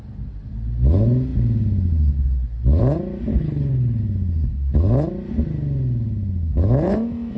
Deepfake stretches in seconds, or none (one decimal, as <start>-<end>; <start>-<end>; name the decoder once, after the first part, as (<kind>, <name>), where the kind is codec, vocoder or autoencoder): 3.3-4.0 (codec, HILCodec)